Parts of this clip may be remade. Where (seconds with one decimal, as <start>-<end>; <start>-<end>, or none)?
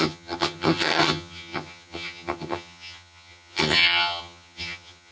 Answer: 0.0-5.1